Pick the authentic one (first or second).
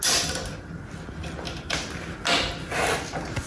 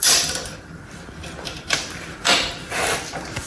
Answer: first